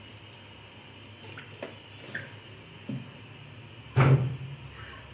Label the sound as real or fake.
real